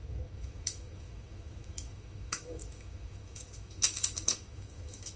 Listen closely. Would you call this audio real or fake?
fake